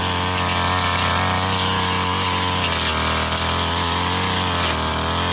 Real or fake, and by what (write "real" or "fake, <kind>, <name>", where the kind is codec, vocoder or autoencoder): real